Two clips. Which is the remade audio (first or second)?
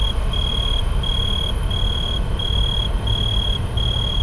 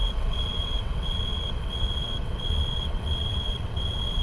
second